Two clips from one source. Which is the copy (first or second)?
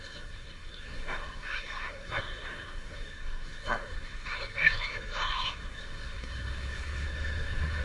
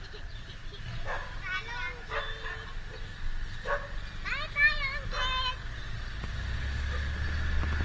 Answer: first